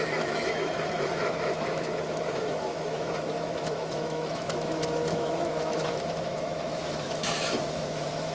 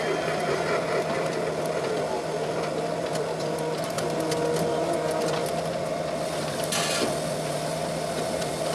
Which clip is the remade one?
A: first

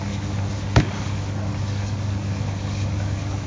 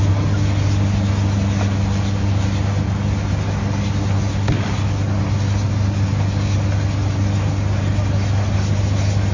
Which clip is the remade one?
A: first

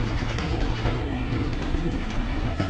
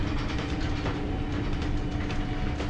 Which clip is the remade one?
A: first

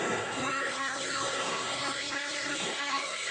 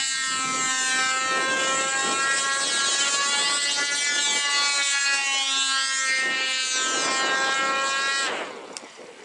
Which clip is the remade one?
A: first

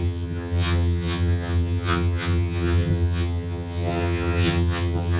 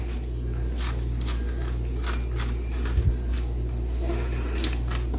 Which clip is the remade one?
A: first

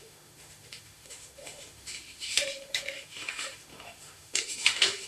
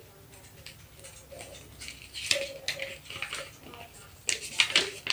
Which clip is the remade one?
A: first